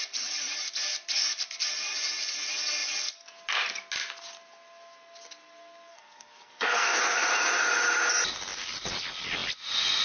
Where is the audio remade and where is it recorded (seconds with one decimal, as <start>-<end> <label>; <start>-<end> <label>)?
0.0-5.9 recorded; 5.9-7.3 remade; 7.3-10.0 recorded